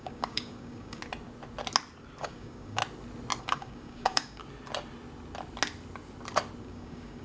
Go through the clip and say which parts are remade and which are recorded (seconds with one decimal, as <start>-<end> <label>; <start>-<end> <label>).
0.0-1.0 remade; 1.0-2.2 recorded; 2.2-2.8 remade; 2.8-3.4 recorded; 3.4-4.4 remade; 4.4-6.6 recorded; 6.6-7.2 remade